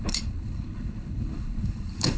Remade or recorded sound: remade